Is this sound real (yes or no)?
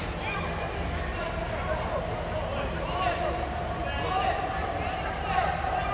yes